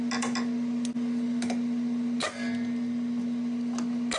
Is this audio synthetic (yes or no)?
no